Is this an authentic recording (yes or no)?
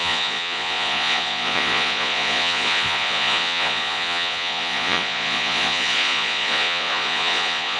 no